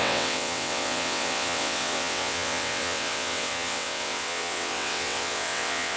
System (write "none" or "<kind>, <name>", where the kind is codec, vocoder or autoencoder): vocoder, WaveNeXt